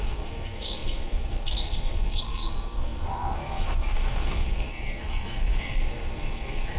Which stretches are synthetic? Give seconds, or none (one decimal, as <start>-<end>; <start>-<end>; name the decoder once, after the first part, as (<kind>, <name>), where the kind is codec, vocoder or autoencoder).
0.0-6.8 (codec, SNAC)